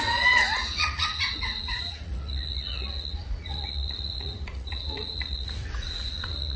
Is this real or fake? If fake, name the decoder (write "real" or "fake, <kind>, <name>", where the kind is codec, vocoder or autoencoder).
fake, vocoder, Vocos